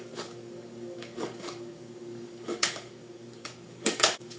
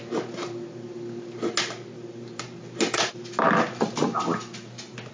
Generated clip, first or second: first